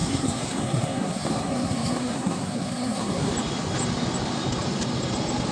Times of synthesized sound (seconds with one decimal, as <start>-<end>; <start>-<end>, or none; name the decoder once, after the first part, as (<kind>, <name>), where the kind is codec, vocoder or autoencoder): 0.0-3.3 (codec, SNAC)